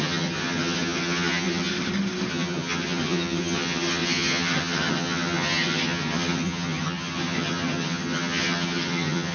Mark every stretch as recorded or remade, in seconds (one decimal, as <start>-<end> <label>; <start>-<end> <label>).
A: 0.0-1.7 remade; 1.7-2.3 recorded; 2.3-9.3 remade